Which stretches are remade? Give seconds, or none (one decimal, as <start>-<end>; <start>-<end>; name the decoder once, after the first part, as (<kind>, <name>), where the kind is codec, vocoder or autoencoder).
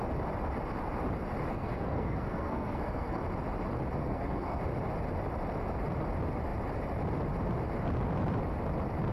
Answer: 1.5-3.2 (codec, SNAC); 4.0-4.6